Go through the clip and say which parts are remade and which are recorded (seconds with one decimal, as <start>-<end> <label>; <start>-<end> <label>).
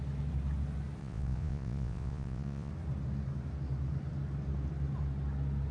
0.0-1.0 recorded; 1.0-2.7 remade; 2.7-5.7 recorded